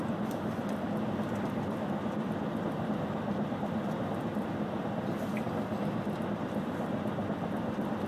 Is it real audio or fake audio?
real